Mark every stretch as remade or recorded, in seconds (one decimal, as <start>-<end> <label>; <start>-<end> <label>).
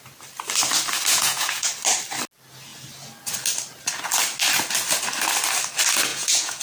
0.0-1.1 recorded; 1.1-1.7 remade; 1.7-6.1 recorded; 6.1-6.6 remade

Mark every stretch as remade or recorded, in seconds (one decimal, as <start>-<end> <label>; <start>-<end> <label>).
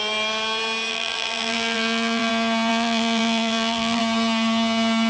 0.0-0.9 recorded; 0.9-2.3 remade; 2.3-2.7 recorded; 2.7-4.0 remade; 4.0-5.1 recorded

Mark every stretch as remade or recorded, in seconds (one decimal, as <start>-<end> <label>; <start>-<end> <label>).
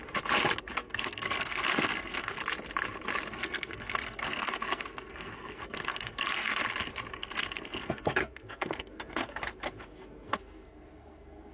0.0-0.6 recorded; 0.6-2.4 remade; 2.4-3.3 recorded; 3.3-6.5 remade; 6.5-7.1 recorded; 7.1-11.5 remade